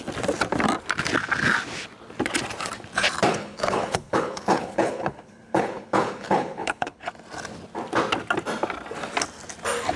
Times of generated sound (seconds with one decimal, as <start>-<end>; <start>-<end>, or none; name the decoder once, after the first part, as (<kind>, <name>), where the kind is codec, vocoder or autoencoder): 3.3-7.1 (codec, HILCodec)